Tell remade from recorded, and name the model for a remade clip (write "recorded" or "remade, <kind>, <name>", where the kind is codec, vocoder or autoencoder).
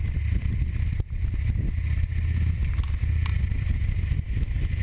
remade, vocoder, BigVGAN v2